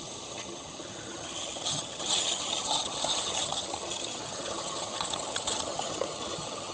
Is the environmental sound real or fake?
fake